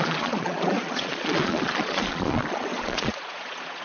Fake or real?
fake